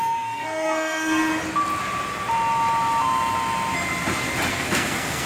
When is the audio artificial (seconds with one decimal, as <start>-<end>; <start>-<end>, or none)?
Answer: 0.0-1.3; 4.5-5.3